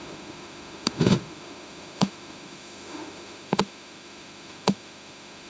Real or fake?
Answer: fake